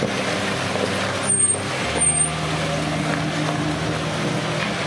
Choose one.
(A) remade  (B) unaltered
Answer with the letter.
B